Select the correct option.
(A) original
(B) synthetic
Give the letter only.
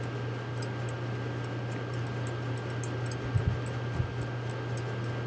A